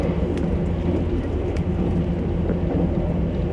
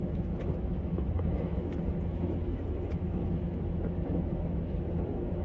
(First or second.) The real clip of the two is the first